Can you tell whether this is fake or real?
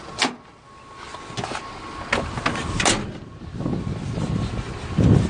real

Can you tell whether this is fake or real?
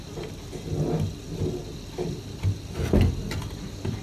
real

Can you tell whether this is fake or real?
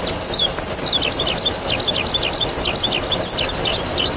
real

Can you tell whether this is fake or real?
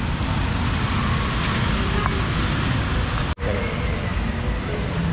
real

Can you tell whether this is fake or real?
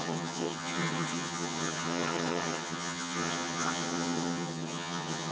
fake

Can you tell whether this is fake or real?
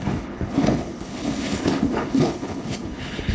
fake